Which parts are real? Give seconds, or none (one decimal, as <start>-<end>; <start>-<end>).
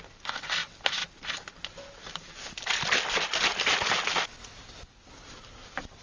0.0-6.0